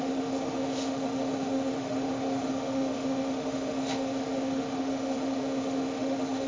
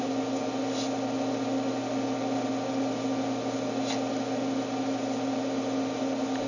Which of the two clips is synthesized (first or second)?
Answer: first